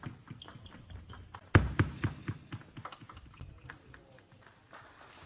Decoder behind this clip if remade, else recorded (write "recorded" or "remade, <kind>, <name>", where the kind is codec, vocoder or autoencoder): recorded